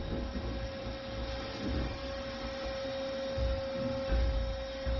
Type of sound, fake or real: real